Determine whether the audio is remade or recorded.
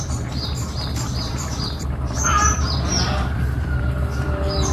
remade